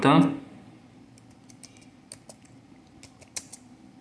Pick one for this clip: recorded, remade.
recorded